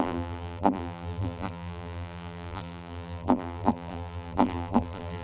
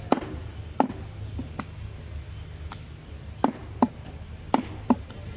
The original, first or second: second